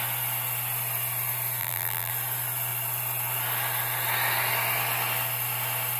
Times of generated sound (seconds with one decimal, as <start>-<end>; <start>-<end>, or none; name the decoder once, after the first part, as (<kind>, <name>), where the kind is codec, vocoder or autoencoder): 1.6-2.1 (vocoder, BigVGAN v2)